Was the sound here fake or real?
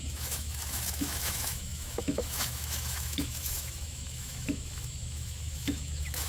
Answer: fake